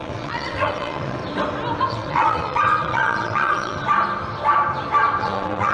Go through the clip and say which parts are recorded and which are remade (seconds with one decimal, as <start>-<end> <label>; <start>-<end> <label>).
0.0-1.2 remade; 1.2-1.9 recorded; 1.9-3.8 remade; 3.8-5.2 recorded; 5.2-5.7 remade